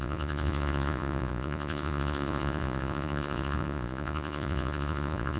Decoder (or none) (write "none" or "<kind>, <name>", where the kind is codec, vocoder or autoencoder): vocoder, Vocos